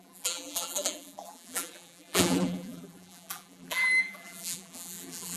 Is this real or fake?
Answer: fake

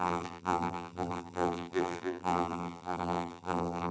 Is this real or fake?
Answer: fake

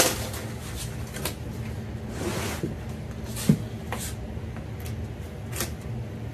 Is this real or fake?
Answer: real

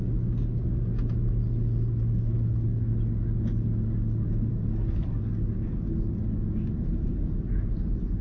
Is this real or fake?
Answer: real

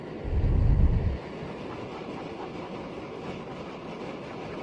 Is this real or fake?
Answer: real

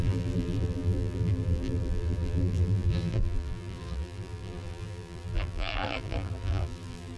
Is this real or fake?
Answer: fake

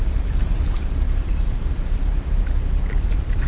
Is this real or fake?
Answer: fake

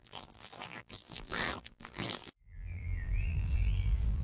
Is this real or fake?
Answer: fake